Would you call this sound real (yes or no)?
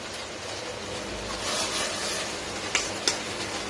yes